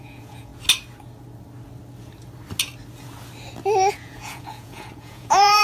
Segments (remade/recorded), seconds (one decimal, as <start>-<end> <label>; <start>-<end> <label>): 0.0-0.5 remade; 0.5-3.9 recorded; 3.9-5.6 remade